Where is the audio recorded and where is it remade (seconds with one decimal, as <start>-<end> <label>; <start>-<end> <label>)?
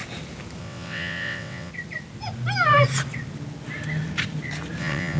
0.0-0.6 recorded; 0.6-1.7 remade; 1.7-4.8 recorded; 4.8-5.2 remade